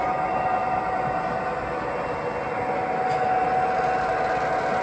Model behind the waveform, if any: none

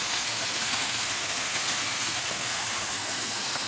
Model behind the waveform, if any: codec, SNAC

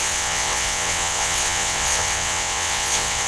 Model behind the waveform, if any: vocoder, WaveNeXt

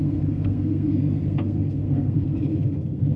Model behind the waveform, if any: codec, SNAC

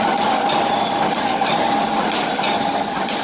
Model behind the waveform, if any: none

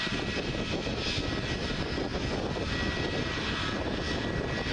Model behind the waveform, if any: none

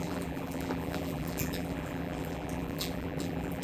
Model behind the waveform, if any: vocoder, BigVGAN v2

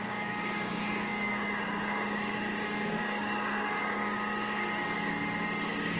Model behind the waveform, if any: codec, DAC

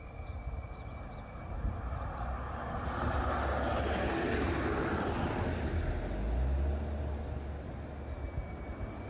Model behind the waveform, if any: none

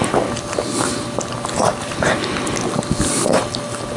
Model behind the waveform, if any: none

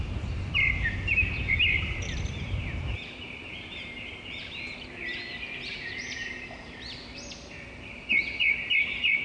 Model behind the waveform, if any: vocoder, BigVGAN v2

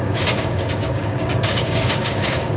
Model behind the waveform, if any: codec, DAC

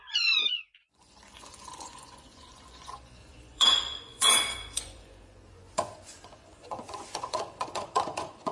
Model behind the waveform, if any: vocoder, Vocos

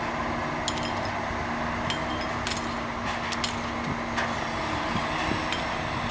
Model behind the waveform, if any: none